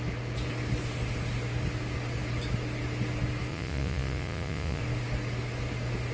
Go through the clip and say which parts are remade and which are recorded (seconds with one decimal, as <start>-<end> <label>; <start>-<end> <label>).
0.0-3.5 recorded; 3.5-4.8 remade; 4.8-6.1 recorded